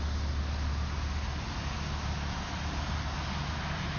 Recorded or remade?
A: recorded